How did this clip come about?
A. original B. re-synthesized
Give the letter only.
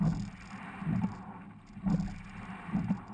A